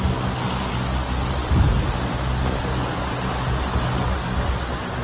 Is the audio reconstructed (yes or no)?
no